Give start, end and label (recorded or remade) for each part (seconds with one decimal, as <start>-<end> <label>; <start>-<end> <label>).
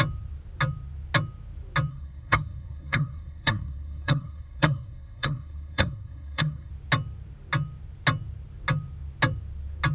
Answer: 0.0-1.9 recorded; 1.9-6.7 remade; 6.7-9.9 recorded